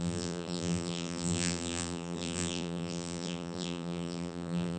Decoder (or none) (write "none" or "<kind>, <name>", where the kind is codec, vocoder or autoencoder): vocoder, BigVGAN v2